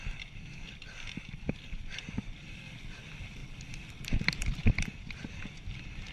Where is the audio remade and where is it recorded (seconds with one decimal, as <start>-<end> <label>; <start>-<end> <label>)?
0.0-6.1 recorded